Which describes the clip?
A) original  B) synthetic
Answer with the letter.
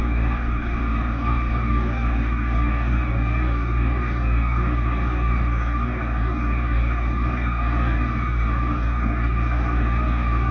B